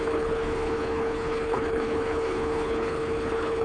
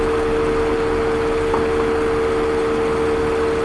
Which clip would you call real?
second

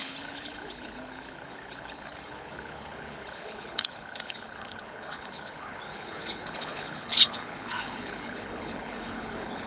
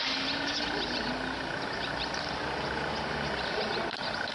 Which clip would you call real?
second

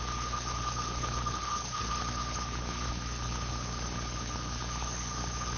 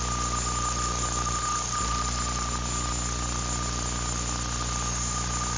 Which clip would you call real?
second